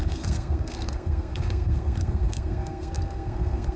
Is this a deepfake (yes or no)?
yes